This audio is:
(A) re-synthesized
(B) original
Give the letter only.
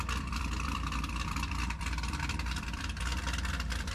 A